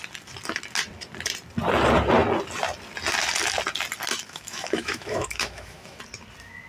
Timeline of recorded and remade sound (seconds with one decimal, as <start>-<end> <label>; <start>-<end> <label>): 0.0-4.2 recorded; 4.2-6.0 remade; 6.0-6.7 recorded